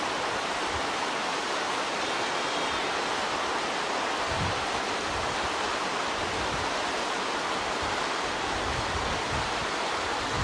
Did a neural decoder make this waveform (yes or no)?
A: no